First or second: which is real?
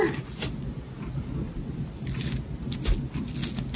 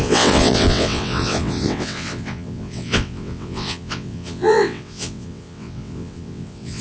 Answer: first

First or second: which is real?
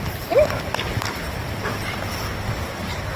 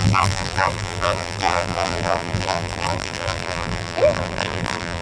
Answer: first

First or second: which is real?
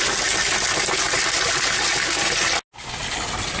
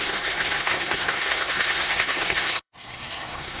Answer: first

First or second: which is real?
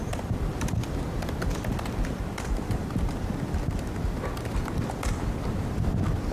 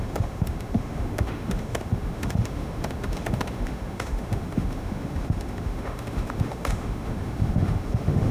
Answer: first